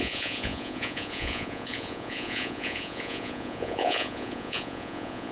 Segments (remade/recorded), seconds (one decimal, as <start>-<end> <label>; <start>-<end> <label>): 0.0-5.3 remade